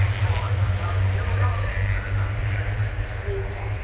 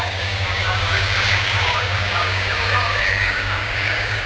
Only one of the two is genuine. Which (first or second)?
first